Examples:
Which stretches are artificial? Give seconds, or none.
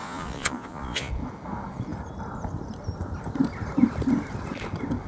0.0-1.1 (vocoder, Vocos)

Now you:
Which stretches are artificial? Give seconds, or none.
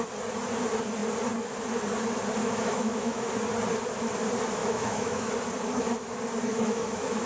2.4-3.3 (autoencoder, DAC-VAE); 4.6-5.3; 6.5-7.3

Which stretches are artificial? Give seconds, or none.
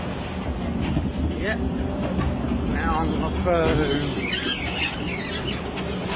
none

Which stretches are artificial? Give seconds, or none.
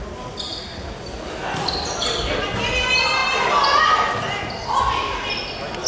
none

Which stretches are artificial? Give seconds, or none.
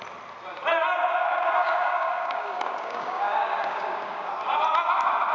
1.1-4.3 (codec, DAC)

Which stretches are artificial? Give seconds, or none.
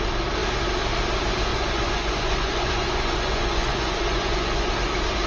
1.5-4.7 (vocoder, Vocos)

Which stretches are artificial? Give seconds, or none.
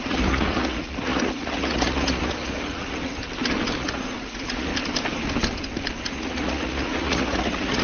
0.0-3.2 (vocoder, Vocos); 3.8-4.7; 6.0-7.8